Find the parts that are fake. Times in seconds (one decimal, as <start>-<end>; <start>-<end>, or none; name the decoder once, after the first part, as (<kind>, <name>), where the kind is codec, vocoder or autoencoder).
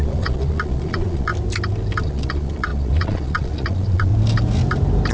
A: 0.0-1.3 (vocoder, Vocos); 2.0-4.1